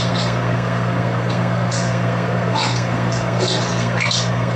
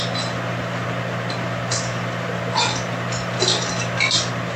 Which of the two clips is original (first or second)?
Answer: second